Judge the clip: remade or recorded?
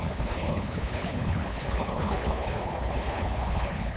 remade